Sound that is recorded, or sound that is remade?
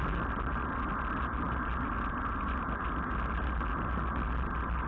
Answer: recorded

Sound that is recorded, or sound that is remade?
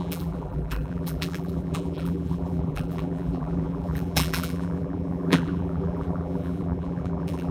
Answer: remade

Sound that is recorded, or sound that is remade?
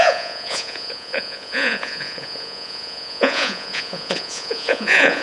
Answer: remade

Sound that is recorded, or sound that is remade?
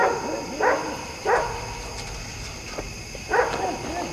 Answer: recorded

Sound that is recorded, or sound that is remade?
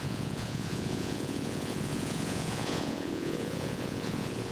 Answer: remade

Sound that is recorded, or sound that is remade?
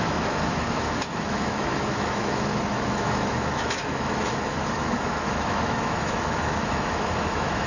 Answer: remade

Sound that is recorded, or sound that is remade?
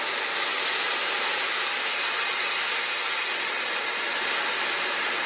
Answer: recorded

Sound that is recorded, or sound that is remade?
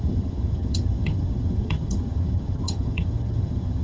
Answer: remade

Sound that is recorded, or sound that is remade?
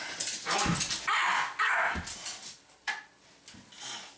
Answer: recorded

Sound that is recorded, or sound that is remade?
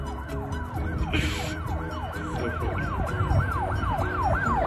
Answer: recorded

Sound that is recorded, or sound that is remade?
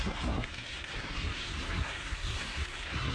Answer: remade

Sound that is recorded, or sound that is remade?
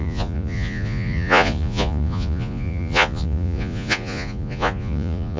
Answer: remade